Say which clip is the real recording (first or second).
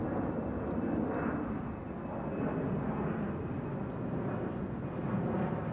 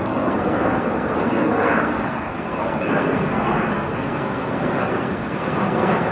first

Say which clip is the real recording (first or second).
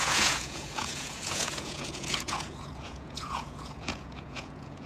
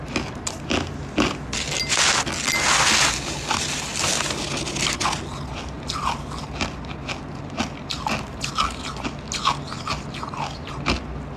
second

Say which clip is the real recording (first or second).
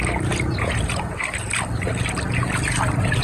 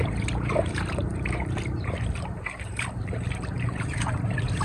first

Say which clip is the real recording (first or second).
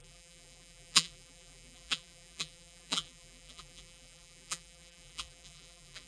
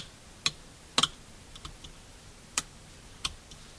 second